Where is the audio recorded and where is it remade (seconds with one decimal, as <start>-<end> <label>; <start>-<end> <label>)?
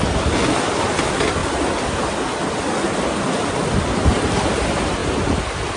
0.0-5.8 recorded